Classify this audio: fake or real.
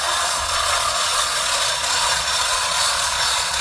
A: fake